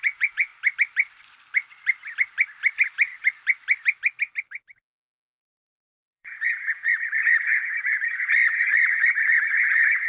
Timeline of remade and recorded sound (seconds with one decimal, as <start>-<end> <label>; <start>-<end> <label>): 0.0-0.5 remade; 0.5-5.4 recorded; 5.4-10.1 remade